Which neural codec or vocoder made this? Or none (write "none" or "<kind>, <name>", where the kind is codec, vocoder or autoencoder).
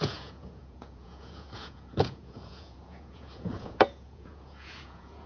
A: vocoder, Vocos